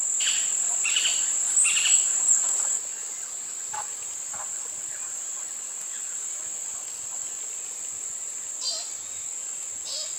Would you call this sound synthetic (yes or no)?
no